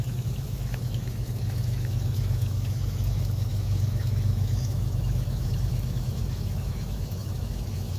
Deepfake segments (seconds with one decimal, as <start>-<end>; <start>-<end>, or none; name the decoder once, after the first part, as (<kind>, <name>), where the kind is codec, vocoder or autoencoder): 0.0-8.0 (autoencoder, DAC-VAE)